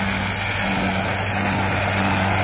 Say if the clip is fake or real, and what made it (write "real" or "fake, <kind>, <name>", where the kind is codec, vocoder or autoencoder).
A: real